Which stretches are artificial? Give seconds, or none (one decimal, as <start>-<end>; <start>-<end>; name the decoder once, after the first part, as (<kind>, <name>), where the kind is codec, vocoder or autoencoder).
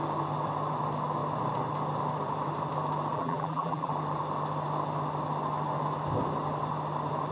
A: 3.1-3.9 (vocoder, BigVGAN v2)